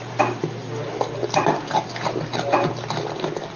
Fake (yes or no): no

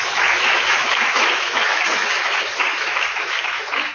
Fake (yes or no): yes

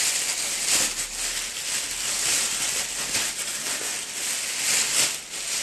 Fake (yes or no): no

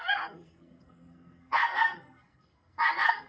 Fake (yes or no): yes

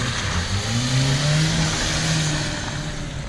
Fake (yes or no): no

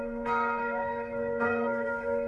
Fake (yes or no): yes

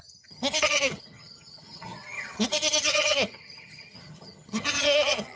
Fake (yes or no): yes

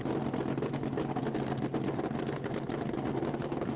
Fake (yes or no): no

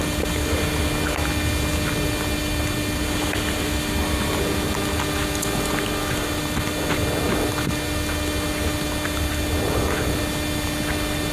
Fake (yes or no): no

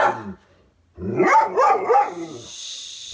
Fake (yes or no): no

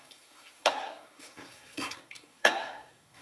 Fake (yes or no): yes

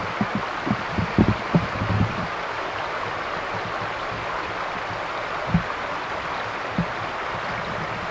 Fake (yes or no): no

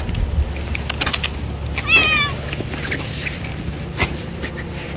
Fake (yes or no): no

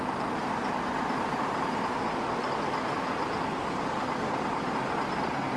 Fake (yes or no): no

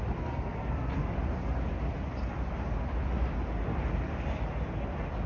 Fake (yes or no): no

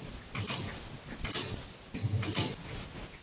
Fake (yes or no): no